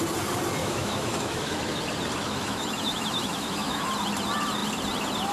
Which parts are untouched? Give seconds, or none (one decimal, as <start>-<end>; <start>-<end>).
0.0-0.6; 1.8-2.2; 3.9-5.3